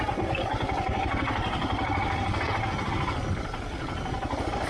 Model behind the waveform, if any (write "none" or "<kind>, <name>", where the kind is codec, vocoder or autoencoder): none